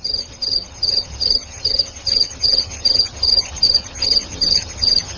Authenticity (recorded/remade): remade